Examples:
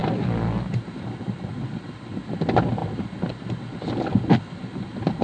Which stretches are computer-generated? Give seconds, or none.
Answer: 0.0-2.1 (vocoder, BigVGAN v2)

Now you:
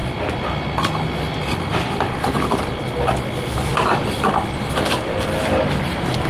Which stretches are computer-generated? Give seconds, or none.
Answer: 0.0-2.6 (vocoder, BigVGAN v2); 5.1-5.6

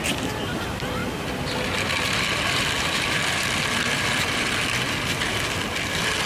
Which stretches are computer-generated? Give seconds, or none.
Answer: none

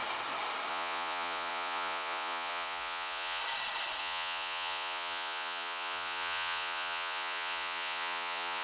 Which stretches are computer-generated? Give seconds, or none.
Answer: 0.7-3.4 (vocoder, Vocos); 4.0-8.6

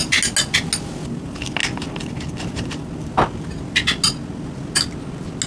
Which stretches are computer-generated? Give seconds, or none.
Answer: none

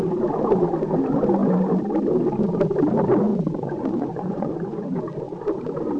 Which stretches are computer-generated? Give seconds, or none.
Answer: 3.3-5.0 (vocoder, Vocos)

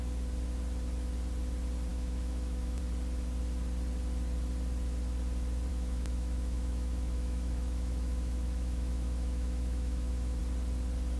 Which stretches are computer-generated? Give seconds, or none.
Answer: 1.9-2.8 (autoencoder, DAC-VAE); 5.7-10.4

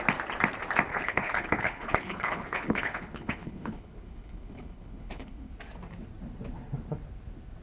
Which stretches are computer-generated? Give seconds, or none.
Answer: 0.9-5.5 (codec, HILCodec)